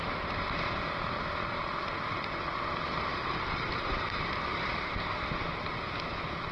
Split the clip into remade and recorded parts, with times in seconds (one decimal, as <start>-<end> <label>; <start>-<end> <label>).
0.0-0.5 remade; 0.5-3.1 recorded; 3.1-4.9 remade; 4.9-6.5 recorded